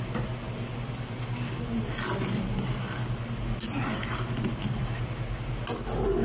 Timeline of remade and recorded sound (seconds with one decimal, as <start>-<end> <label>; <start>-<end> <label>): 0.0-4.0 recorded; 4.0-5.3 remade; 5.3-6.2 recorded